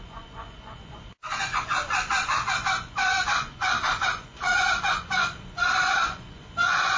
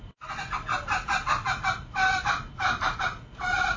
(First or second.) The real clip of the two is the second